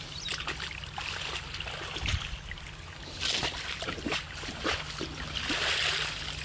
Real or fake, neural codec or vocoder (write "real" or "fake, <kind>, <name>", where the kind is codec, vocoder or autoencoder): real